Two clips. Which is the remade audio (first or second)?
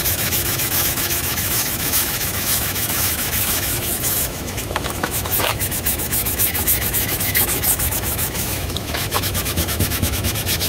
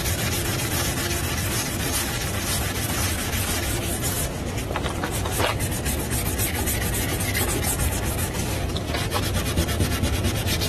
first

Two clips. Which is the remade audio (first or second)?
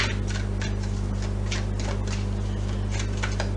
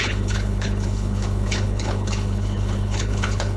second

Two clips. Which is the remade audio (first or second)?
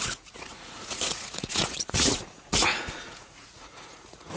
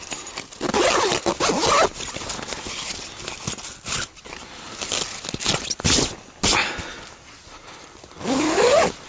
first